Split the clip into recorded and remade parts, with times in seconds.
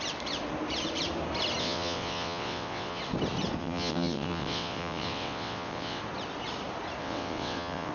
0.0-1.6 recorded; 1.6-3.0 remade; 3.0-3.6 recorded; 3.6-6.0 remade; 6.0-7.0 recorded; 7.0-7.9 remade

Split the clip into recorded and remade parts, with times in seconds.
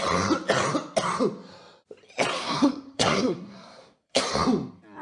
0.0-2.4 recorded; 2.4-4.2 remade; 4.2-5.0 recorded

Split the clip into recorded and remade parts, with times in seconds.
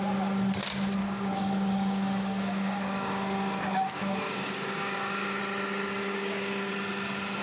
0.0-1.0 recorded; 1.0-5.4 remade; 5.4-6.0 recorded; 6.0-6.7 remade; 6.7-7.4 recorded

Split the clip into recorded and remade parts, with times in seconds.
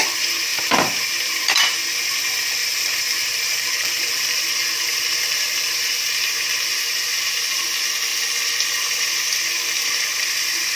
0.0-2.6 recorded; 2.6-7.3 remade; 7.3-10.8 recorded